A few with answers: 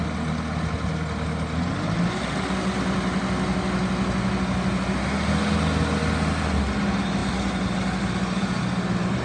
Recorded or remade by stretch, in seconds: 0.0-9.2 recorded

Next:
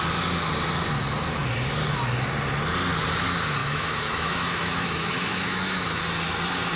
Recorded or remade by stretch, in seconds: 0.0-3.6 recorded; 3.6-6.0 remade; 6.0-6.8 recorded

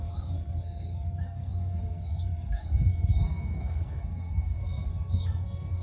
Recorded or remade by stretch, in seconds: 0.0-5.8 remade

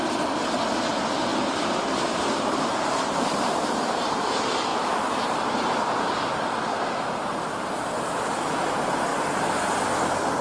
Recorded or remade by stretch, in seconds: 0.0-1.3 recorded; 1.3-4.1 remade; 4.1-6.7 recorded; 6.7-7.9 remade; 7.9-9.1 recorded; 9.1-9.7 remade; 9.7-10.4 recorded

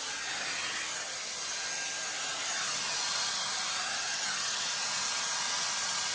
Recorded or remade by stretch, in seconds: 0.0-4.1 recorded; 4.1-4.6 remade; 4.6-6.1 recorded

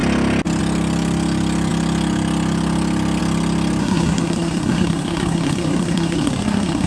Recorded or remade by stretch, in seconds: 0.0-3.8 recorded; 3.8-6.9 remade

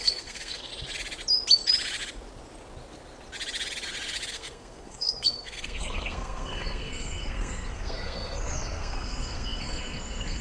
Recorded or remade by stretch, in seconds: 0.0-0.7 remade; 0.7-4.3 recorded; 4.3-10.4 remade